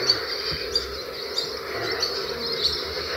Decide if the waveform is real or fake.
real